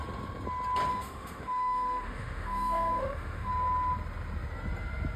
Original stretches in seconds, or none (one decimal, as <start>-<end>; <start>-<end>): 0.0-0.9; 3.5-5.2